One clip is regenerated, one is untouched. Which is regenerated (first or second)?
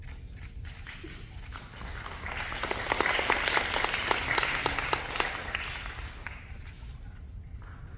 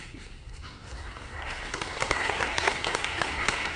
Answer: second